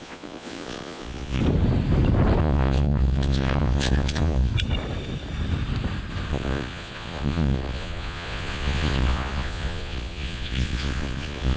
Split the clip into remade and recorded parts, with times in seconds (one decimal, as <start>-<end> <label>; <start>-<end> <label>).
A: 0.0-1.4 remade; 1.4-2.4 recorded; 2.4-4.5 remade; 4.5-6.3 recorded; 6.3-11.6 remade